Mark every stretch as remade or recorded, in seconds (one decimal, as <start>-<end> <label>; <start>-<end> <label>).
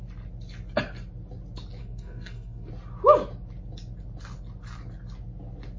0.0-1.8 recorded; 1.8-2.7 remade; 2.7-5.8 recorded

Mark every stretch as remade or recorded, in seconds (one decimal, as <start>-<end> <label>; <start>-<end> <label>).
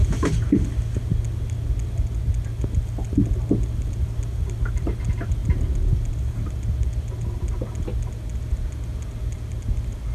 0.0-10.1 recorded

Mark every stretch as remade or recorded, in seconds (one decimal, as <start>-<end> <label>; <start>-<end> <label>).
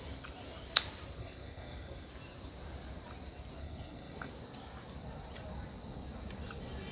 0.0-1.2 recorded; 1.2-2.1 remade; 2.1-3.6 recorded; 3.6-4.3 remade; 4.3-6.9 recorded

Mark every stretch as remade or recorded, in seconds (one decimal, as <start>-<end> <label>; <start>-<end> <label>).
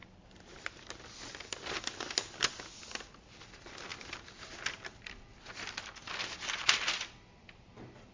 0.0-8.1 recorded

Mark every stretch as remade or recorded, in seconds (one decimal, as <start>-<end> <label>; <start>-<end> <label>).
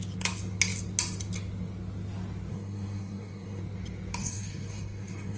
0.0-2.5 recorded; 2.5-3.6 remade; 3.6-4.2 recorded; 4.2-5.4 remade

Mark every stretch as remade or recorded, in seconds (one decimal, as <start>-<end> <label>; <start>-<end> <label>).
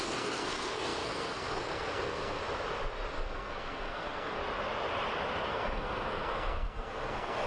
0.0-2.4 remade; 2.4-3.1 recorded; 3.1-4.4 remade; 4.4-5.5 recorded; 5.5-7.5 remade